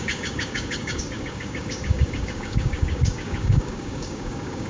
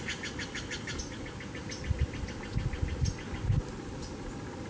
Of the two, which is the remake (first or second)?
first